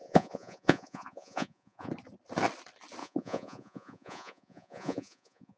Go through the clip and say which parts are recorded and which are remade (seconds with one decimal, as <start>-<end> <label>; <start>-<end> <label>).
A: 0.0-1.9 remade; 1.9-3.0 recorded; 3.0-5.6 remade